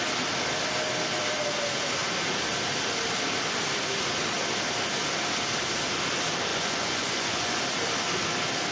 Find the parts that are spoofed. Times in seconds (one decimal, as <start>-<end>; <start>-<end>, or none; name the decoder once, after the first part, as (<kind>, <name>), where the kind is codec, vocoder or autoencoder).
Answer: 6.5-7.6 (vocoder, Vocos)